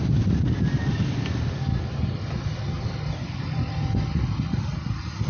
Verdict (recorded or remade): recorded